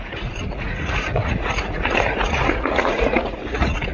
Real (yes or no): no